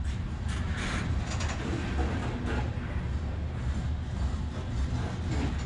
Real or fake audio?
real